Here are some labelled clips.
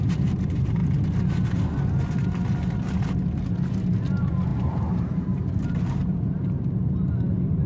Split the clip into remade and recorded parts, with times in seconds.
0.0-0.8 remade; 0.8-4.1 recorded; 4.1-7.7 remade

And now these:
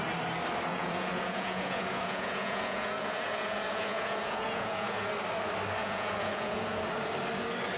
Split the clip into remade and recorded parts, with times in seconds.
0.0-0.7 recorded; 0.7-5.1 remade; 5.1-5.8 recorded; 5.8-6.8 remade; 6.8-7.8 recorded

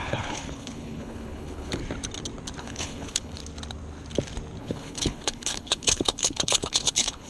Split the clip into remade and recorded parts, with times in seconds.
0.0-1.8 remade; 1.8-2.6 recorded; 2.6-3.4 remade; 3.4-4.6 recorded; 4.6-7.3 remade

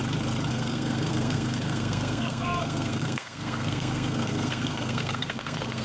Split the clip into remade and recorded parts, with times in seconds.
0.0-0.5 recorded; 0.5-5.8 remade

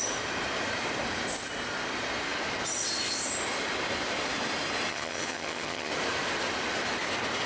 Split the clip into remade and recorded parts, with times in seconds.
0.0-4.9 recorded; 4.9-5.9 remade; 5.9-7.5 recorded

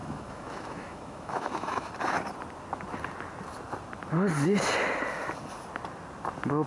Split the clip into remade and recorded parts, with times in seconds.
0.0-1.9 remade; 1.9-6.7 recorded

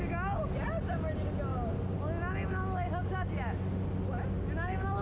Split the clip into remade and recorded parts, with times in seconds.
0.0-5.0 recorded

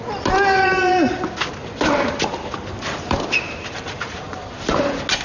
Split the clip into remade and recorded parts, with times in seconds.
0.0-1.6 recorded; 1.6-4.7 remade; 4.7-5.2 recorded